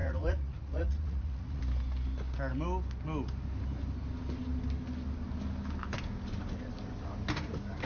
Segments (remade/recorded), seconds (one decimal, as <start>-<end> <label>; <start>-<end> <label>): 0.0-1.6 remade; 1.6-7.9 recorded